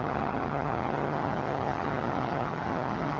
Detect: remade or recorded remade